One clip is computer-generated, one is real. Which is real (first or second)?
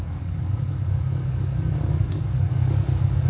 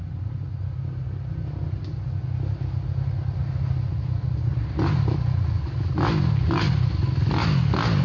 second